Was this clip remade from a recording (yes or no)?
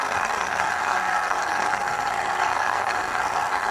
yes